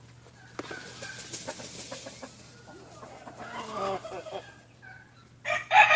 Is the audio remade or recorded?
recorded